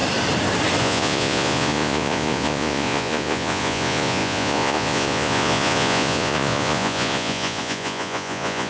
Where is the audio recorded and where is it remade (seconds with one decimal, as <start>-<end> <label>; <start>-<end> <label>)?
0.0-0.8 recorded; 0.8-8.7 remade